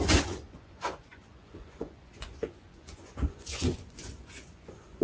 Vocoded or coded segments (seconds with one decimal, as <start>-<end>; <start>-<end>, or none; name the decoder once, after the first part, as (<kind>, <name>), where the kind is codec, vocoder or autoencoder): 0.0-5.0 (vocoder, Vocos)